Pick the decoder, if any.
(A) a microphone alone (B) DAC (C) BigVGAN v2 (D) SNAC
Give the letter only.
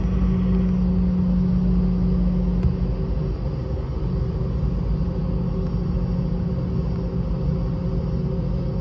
A